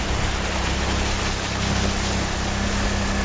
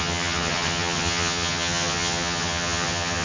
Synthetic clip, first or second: second